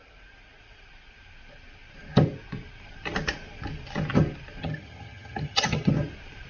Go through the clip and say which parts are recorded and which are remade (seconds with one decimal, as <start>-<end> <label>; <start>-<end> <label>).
0.0-4.6 recorded; 4.6-5.9 remade; 5.9-6.5 recorded